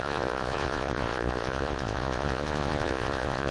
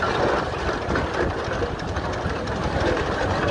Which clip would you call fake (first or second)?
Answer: first